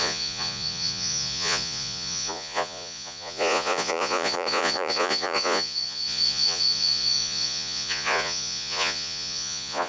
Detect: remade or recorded remade